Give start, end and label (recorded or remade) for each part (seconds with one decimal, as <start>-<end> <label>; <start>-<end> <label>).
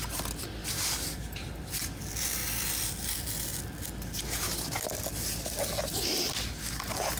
0.0-7.2 recorded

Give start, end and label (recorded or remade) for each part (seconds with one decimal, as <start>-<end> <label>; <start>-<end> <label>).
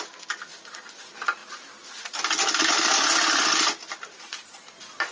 0.0-5.1 recorded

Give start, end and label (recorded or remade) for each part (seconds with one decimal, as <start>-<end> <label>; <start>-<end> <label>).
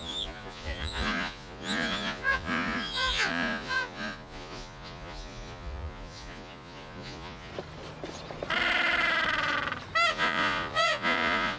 0.0-7.5 remade; 7.5-10.1 recorded; 10.1-11.6 remade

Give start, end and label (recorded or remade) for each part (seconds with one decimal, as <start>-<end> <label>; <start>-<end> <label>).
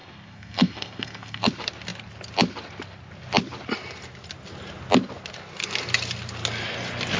0.0-1.5 remade; 1.5-7.2 recorded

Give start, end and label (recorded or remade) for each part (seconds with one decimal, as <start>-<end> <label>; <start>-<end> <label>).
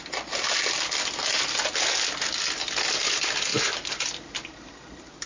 0.0-5.3 recorded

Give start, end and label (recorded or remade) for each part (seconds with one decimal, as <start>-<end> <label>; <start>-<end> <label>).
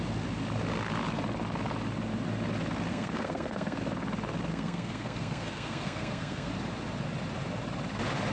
0.0-2.9 recorded; 2.9-3.8 remade; 3.8-4.5 recorded; 4.5-6.5 remade; 6.5-8.3 recorded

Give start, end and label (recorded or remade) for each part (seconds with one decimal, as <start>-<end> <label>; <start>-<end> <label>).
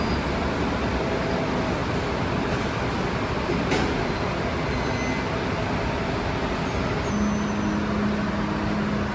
0.0-9.1 recorded